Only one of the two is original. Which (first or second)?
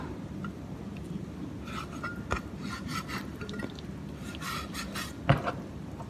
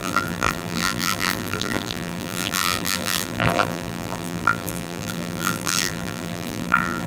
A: first